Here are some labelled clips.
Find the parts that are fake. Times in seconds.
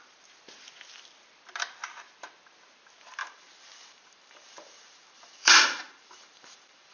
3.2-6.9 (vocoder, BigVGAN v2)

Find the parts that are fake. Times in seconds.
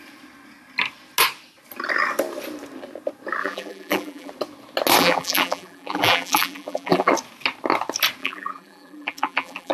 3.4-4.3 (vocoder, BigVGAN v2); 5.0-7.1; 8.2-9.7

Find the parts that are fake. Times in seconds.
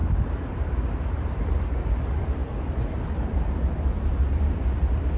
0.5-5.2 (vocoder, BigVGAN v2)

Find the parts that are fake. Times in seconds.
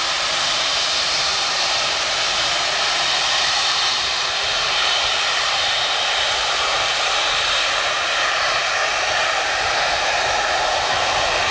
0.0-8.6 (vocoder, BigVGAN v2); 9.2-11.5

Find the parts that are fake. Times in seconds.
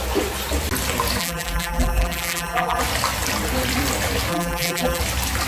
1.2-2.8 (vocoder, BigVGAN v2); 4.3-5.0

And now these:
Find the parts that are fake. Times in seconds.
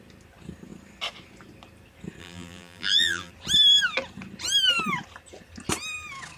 2.2-3.3 (vocoder, BigVGAN v2)